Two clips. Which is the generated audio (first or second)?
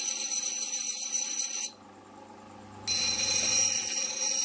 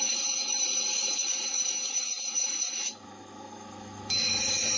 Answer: second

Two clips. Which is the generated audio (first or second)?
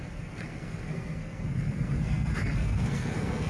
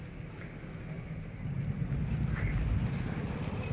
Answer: first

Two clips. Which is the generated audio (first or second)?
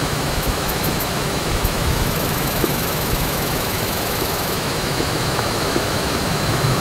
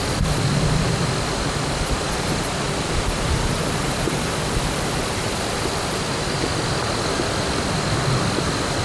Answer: first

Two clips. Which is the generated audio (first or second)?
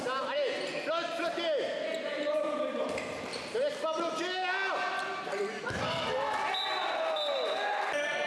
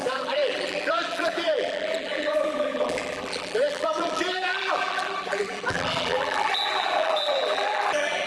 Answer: second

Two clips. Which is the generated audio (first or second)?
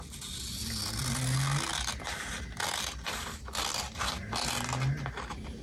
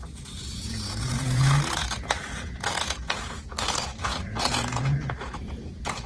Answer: second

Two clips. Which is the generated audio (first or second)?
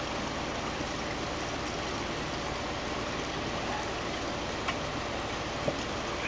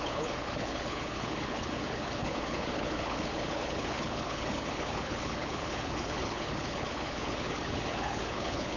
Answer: second